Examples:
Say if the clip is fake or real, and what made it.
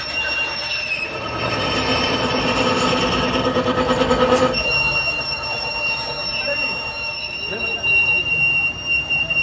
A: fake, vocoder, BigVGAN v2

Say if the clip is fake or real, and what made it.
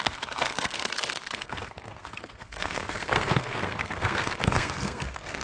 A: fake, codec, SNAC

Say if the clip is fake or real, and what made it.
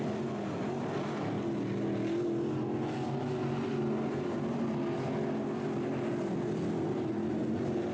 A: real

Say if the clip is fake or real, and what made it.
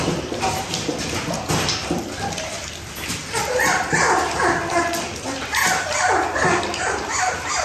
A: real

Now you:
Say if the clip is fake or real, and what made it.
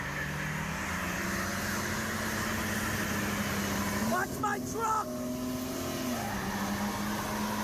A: real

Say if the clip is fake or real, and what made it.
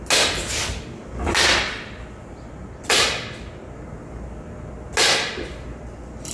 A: real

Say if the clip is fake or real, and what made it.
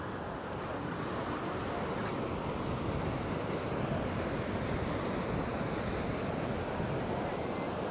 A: real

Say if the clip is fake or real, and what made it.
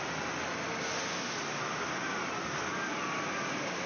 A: real